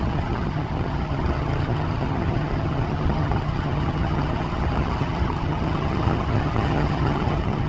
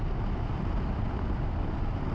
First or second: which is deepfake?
first